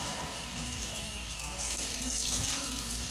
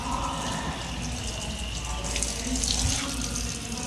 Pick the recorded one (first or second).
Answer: second